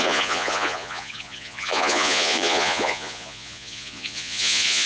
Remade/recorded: remade